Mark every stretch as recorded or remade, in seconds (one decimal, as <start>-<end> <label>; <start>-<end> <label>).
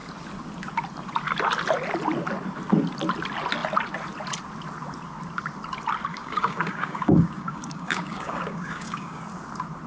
0.0-6.1 recorded; 6.1-9.2 remade; 9.2-9.9 recorded